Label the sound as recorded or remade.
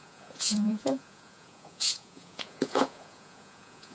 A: remade